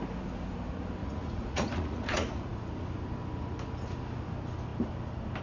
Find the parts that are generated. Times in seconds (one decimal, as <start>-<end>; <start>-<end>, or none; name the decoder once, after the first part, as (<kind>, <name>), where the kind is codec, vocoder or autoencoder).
1.0-2.7 (vocoder, Vocos)